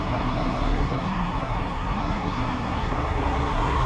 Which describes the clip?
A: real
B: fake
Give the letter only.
B